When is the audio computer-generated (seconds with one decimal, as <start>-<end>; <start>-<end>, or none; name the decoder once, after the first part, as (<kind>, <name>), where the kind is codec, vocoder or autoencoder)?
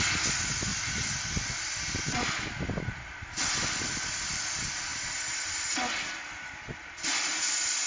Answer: none